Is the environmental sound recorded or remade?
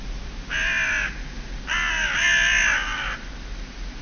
recorded